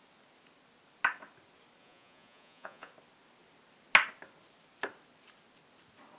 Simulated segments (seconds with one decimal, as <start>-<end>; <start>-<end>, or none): 1.8-2.9